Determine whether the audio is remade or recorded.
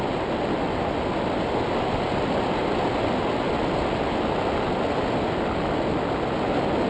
recorded